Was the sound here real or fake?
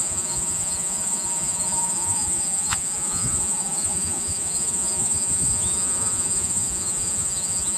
fake